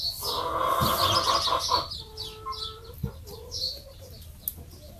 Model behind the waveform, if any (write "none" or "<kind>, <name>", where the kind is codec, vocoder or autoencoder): none